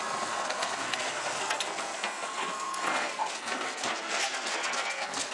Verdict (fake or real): fake